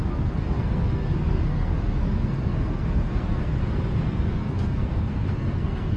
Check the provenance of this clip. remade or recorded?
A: remade